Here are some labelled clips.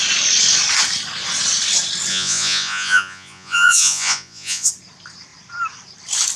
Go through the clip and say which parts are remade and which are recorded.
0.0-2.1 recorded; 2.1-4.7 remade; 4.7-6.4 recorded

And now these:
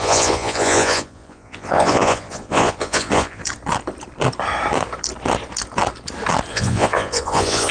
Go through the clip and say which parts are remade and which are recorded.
0.0-3.4 remade; 3.4-6.5 recorded; 6.5-7.7 remade

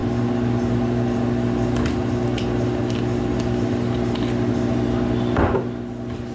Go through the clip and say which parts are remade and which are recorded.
0.0-6.3 recorded